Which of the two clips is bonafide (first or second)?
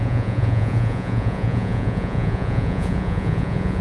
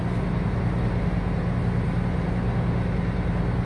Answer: second